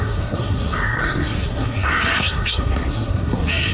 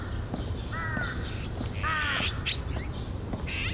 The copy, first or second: first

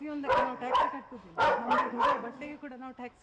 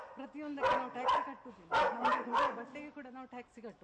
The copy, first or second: first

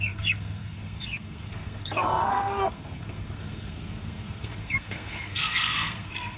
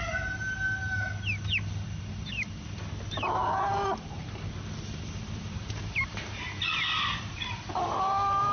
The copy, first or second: first